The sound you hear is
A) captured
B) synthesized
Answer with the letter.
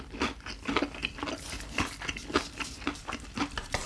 A